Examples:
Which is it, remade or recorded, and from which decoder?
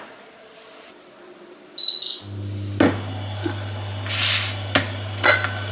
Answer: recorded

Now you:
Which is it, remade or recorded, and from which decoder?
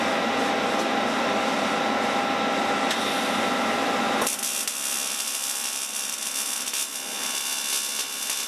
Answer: recorded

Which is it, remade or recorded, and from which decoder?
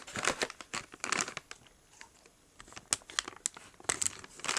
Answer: recorded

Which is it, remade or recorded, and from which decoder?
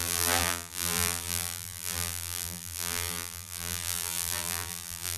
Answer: remade, vocoder, BigVGAN v2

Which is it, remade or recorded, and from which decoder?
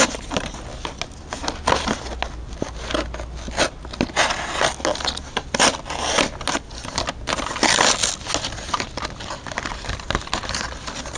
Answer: recorded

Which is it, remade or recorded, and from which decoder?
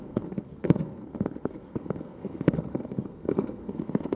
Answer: remade, codec, SNAC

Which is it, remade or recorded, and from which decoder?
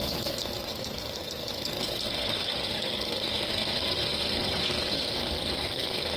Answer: remade, codec, SNAC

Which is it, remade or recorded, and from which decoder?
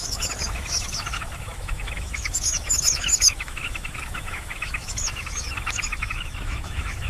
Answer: remade, autoencoder, DAC-VAE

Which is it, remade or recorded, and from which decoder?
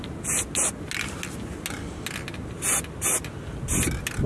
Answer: recorded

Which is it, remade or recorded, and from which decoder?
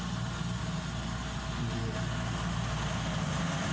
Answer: recorded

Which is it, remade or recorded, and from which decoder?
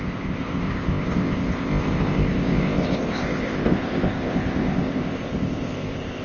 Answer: remade, codec, ZipCodec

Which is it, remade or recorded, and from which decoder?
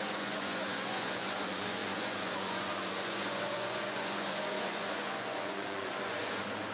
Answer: remade, vocoder, Vocos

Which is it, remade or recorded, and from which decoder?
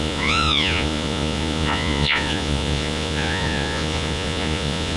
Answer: remade, vocoder, Vocos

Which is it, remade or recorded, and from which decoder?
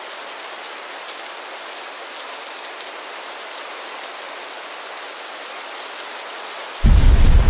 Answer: recorded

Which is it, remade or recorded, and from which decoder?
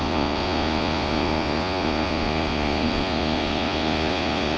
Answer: remade, vocoder, Vocos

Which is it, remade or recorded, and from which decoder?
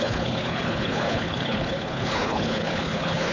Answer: remade, codec, HILCodec